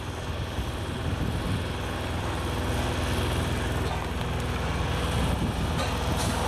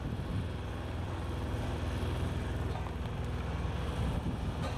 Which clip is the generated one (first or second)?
second